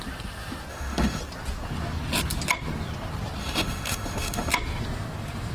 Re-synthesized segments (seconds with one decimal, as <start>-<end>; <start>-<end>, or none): 0.7-1.2; 3.4-4.5